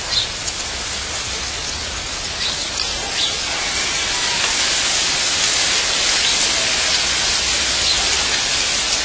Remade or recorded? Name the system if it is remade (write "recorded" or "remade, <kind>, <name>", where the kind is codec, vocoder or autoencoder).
recorded